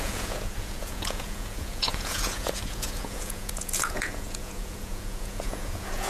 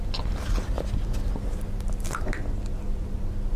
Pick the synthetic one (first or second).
first